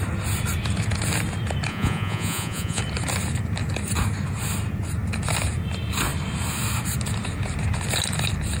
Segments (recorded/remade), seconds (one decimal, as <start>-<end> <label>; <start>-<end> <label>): 0.0-1.7 recorded; 1.7-2.8 remade; 2.8-8.6 recorded